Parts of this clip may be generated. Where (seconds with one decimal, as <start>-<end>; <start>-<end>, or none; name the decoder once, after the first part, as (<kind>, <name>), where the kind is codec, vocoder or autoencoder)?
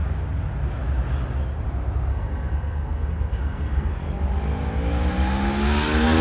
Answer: 2.1-3.9 (codec, SNAC)